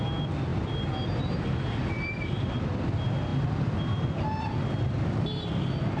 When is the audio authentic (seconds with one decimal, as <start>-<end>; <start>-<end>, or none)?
0.0-6.0